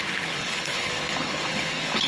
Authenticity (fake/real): fake